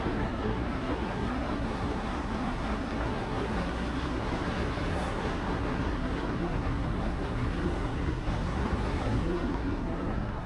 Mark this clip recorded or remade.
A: remade